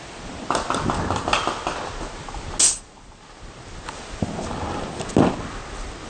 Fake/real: real